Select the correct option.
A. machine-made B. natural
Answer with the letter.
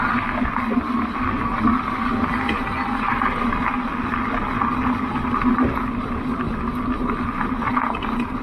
B